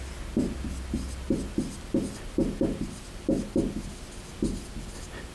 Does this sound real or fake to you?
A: real